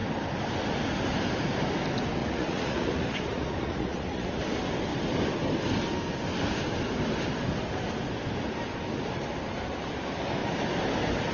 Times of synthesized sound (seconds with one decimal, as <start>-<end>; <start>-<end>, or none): 2.2-4.4

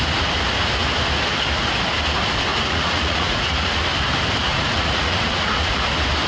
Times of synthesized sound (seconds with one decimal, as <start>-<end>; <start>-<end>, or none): 2.5-3.8; 4.5-5.8

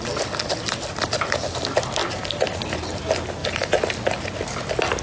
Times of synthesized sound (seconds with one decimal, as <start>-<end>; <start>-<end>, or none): none

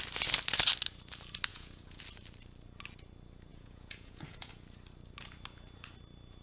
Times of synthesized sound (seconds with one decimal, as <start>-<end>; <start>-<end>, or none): 1.5-2.0; 3.5-4.5

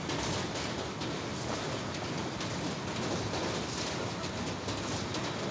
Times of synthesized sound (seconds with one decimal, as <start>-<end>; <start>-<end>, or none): none

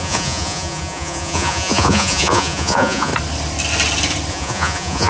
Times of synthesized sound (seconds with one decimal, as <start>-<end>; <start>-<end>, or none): 0.0-3.1; 4.3-5.1